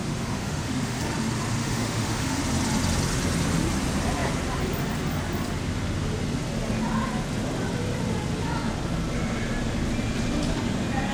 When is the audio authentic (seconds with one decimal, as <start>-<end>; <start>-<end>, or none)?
1.0-1.6; 2.4-11.1